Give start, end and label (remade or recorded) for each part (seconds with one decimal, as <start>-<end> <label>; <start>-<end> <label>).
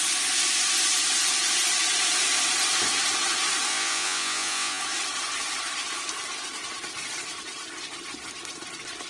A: 0.0-3.7 recorded; 3.7-4.8 remade; 4.8-9.1 recorded